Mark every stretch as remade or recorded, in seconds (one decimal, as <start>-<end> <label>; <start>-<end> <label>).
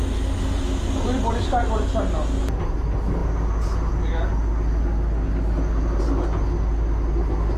0.0-7.6 recorded